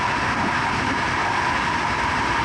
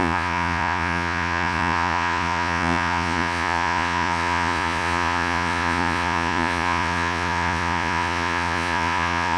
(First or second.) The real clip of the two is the first